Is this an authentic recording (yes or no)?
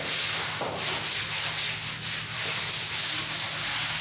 yes